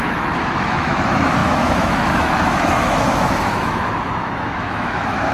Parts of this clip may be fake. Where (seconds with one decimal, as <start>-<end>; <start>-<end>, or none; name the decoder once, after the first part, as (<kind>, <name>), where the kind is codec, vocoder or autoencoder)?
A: 0.0-5.3 (autoencoder, DAC-VAE)